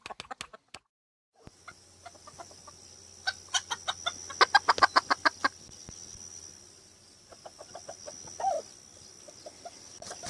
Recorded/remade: recorded